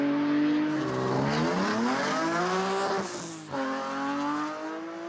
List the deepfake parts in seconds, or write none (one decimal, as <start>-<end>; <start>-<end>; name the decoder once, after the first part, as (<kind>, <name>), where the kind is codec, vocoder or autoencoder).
1.7-2.4 (codec, DAC)